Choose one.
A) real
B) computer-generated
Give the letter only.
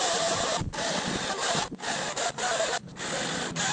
A